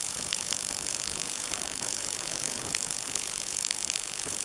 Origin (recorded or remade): remade